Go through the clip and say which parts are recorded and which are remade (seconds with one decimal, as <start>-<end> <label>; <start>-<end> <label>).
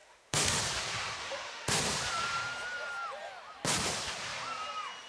0.0-0.6 remade; 0.6-1.2 recorded; 1.2-1.8 remade; 1.8-5.1 recorded